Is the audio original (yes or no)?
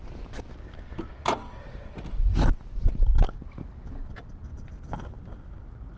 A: yes